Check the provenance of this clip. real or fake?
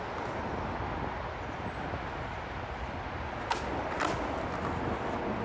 real